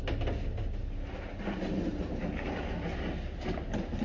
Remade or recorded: recorded